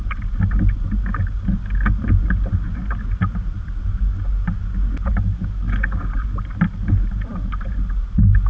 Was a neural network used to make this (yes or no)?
no